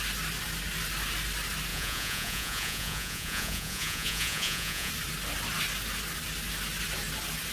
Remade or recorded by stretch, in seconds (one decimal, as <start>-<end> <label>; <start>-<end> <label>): 0.0-1.7 recorded; 1.7-4.9 remade; 4.9-7.5 recorded